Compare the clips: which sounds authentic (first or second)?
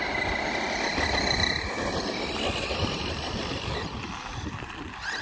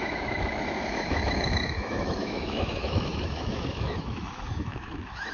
first